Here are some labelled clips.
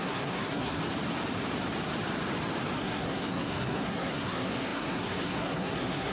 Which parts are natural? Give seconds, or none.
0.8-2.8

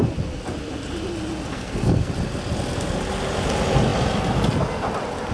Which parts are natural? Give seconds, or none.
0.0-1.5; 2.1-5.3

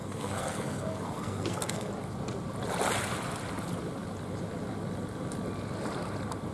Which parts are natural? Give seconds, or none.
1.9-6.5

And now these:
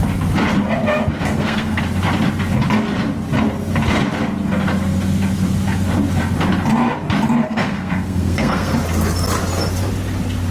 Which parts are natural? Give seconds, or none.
0.0-1.2; 1.8-7.4; 8.7-10.5

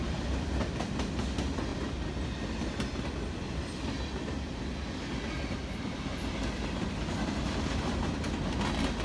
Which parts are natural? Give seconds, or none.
0.0-9.0